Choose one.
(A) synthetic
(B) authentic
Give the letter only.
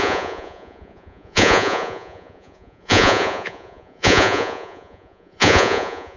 A